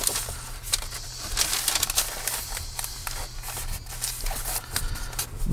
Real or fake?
real